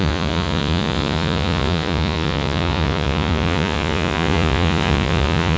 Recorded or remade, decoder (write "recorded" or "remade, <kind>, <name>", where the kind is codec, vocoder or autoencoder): remade, vocoder, Vocos